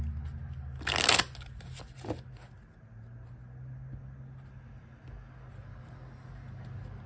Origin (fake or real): real